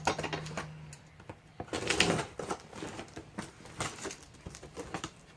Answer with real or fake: real